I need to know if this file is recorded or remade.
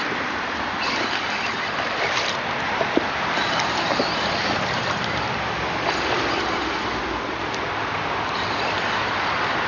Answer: remade